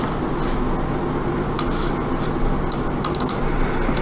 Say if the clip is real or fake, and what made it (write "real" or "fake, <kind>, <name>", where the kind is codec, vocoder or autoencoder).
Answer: real